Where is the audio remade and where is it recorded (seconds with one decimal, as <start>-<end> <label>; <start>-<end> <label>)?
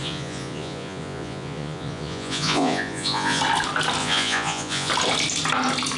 0.0-3.4 remade; 3.4-4.0 recorded; 4.0-4.9 remade; 4.9-6.0 recorded